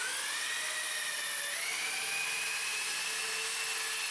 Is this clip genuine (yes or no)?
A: yes